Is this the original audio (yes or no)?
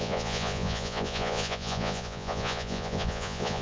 no